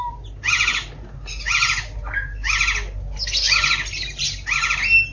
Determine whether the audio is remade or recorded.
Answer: recorded